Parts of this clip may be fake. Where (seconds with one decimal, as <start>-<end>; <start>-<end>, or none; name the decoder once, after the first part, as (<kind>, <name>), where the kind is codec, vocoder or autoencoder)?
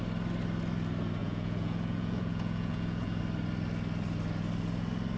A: 1.2-3.2 (vocoder, Vocos)